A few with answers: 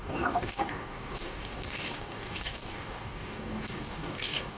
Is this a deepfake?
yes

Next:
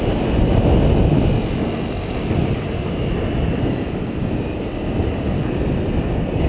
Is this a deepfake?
no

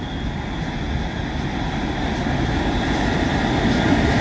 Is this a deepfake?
no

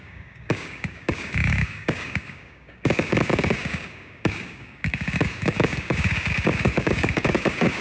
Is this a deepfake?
yes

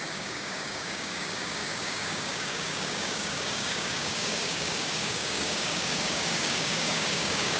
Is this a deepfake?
yes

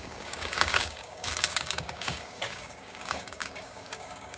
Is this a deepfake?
yes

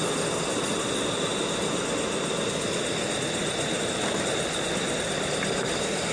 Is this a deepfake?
no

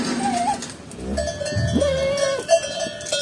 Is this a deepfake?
no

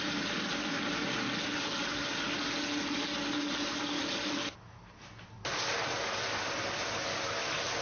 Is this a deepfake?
no